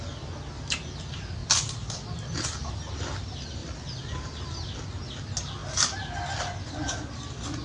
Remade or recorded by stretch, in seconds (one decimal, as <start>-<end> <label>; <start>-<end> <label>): 0.0-7.6 recorded